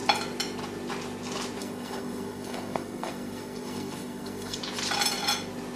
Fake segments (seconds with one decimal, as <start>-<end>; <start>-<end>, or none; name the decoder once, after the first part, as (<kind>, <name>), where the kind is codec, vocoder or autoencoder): 1.6-4.6 (codec, SNAC)